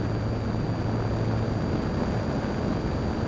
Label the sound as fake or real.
real